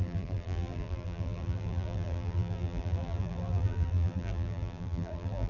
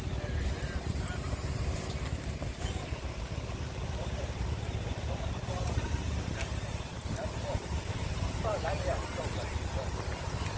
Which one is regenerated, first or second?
first